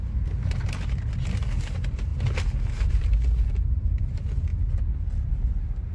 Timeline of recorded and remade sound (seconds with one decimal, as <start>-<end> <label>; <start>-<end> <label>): 0.0-5.9 recorded